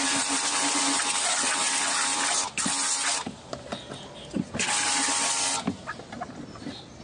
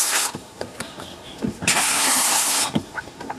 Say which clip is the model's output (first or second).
second